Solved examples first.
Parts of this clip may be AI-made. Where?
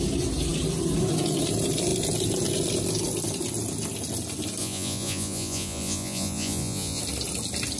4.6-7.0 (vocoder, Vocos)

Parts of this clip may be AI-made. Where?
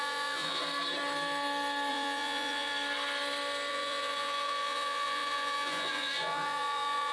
0.0-0.6 (vocoder, Vocos); 1.9-2.7; 3.7-7.1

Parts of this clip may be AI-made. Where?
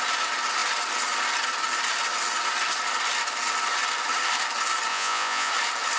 4.9-5.5 (vocoder, Vocos)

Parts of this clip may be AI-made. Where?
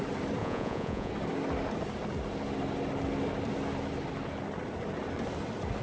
0.4-1.1 (vocoder, Vocos)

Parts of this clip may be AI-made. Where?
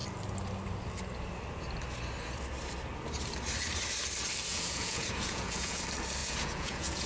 4.5-5.8 (vocoder, Vocos); 6.2-7.1